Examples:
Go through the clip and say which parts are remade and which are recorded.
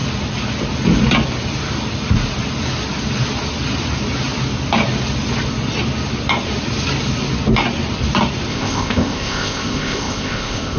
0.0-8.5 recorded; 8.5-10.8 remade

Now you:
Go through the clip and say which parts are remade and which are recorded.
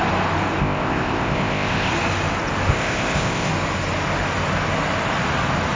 0.0-0.6 recorded; 0.6-1.9 remade; 1.9-2.7 recorded; 2.7-3.5 remade; 3.5-5.8 recorded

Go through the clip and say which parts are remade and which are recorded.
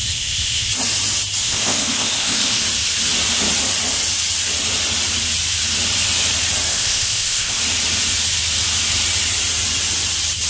0.0-0.7 remade; 0.7-1.4 recorded; 1.4-2.6 remade; 2.6-6.7 recorded; 6.7-7.6 remade; 7.6-10.5 recorded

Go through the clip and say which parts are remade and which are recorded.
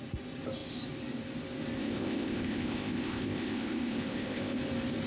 0.0-1.8 recorded; 1.8-4.6 remade; 4.6-5.1 recorded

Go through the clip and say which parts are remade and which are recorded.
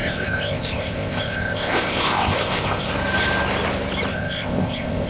0.0-2.9 remade; 2.9-4.1 recorded; 4.1-5.1 remade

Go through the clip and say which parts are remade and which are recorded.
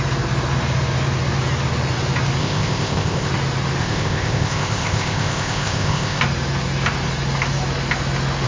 0.0-2.4 recorded; 2.4-3.3 remade; 3.3-3.8 recorded; 3.8-6.2 remade; 6.2-8.5 recorded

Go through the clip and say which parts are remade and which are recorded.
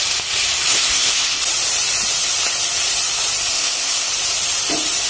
0.0-0.7 recorded; 0.7-1.4 remade; 1.4-3.5 recorded; 3.5-4.1 remade; 4.1-5.1 recorded